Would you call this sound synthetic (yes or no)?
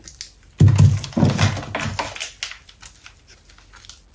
no